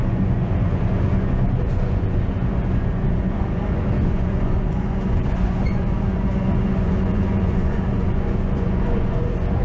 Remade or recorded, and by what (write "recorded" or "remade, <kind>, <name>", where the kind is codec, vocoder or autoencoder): remade, vocoder, Vocos